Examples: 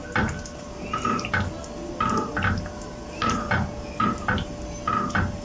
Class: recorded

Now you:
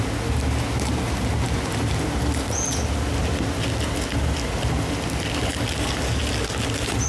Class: recorded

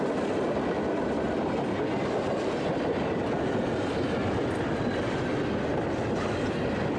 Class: recorded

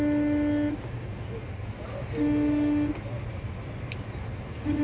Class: recorded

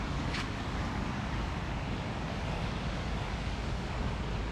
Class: remade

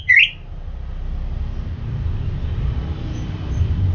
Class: recorded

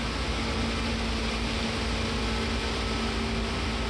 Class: recorded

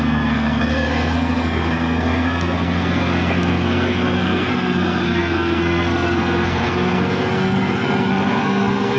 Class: remade